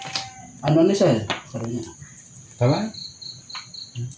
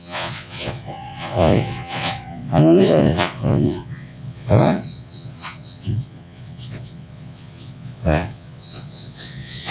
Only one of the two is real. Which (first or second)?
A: first